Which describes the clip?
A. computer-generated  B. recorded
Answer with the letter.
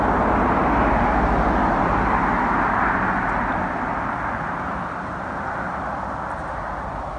B